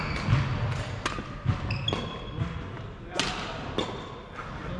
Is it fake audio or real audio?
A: real